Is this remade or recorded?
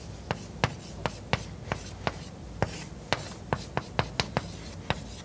recorded